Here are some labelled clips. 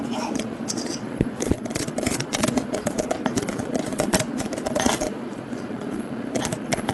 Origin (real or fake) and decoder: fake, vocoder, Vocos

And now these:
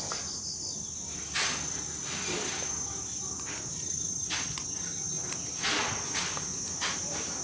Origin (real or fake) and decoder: real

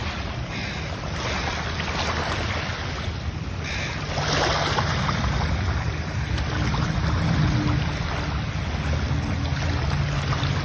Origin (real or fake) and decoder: real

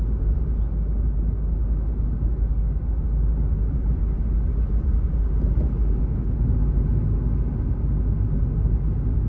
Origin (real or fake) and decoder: real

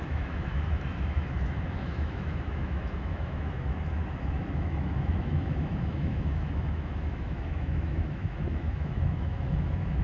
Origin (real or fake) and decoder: fake, autoencoder, DAC-VAE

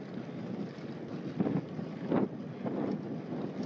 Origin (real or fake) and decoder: real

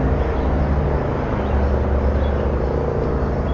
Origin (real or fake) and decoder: real